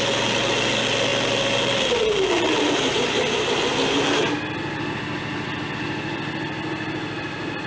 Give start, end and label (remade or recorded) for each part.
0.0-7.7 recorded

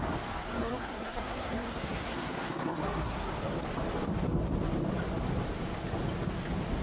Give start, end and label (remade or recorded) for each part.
0.0-0.6 recorded; 0.6-3.3 remade; 3.3-6.8 recorded

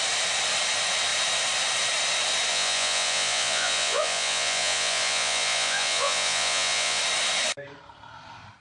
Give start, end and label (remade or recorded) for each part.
0.0-2.5 recorded; 2.5-7.0 remade; 7.0-8.6 recorded

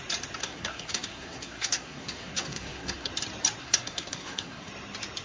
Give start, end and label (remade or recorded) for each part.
0.0-0.4 recorded; 0.4-3.1 remade; 3.1-3.6 recorded; 3.6-4.7 remade; 4.7-5.2 recorded

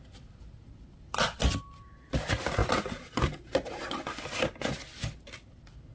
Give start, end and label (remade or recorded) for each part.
0.0-5.9 recorded

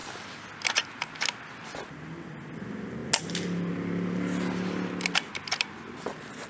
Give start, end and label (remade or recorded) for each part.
0.0-6.5 recorded

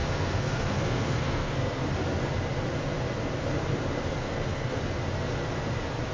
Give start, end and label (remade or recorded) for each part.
0.0-1.8 remade; 1.8-4.2 recorded; 4.2-4.8 remade; 4.8-6.1 recorded

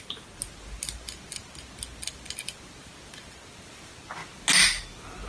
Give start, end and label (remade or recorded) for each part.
0.0-5.3 recorded